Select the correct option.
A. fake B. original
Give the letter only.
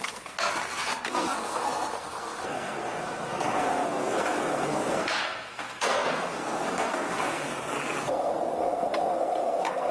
A